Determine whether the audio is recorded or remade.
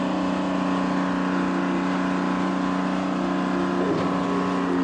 recorded